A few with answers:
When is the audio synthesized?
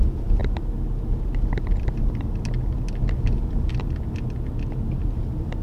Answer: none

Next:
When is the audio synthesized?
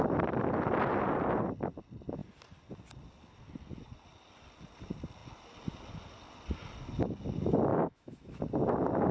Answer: 7.7-8.4 (autoencoder, DAC-VAE)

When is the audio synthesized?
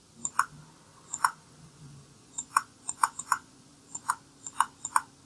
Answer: 0.9-4.1 (vocoder, Vocos)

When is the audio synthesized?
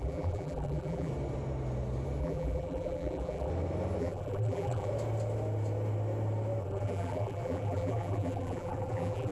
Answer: 0.0-1.1 (vocoder, BigVGAN v2); 2.2-3.5; 4.0-4.9; 6.6-9.3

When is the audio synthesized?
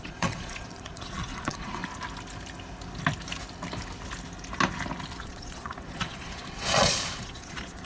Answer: 0.0-1.8 (vocoder, Vocos); 5.2-7.9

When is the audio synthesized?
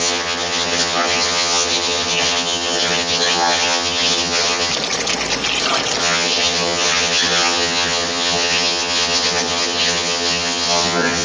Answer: 0.0-4.7 (vocoder, HiFi-GAN); 6.0-11.2